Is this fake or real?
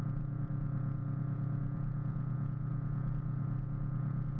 fake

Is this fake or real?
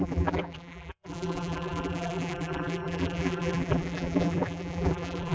fake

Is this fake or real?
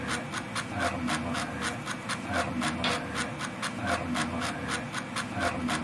real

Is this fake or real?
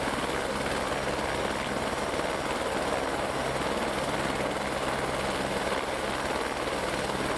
real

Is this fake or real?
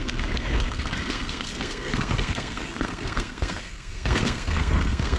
fake